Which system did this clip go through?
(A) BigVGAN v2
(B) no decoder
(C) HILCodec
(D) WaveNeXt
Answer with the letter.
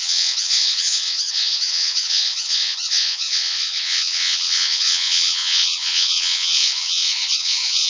D